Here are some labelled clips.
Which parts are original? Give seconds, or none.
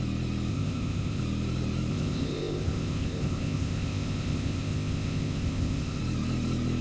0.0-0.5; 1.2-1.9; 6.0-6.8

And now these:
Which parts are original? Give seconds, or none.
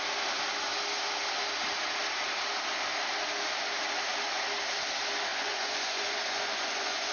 0.0-5.3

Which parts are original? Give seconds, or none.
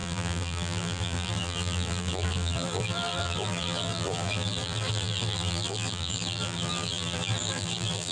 none